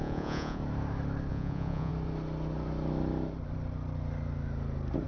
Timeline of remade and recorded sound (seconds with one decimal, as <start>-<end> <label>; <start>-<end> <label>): 0.0-0.6 remade; 0.6-1.3 recorded; 1.3-1.9 remade; 1.9-5.1 recorded